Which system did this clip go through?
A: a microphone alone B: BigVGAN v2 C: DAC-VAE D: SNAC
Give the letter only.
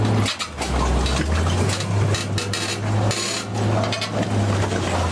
A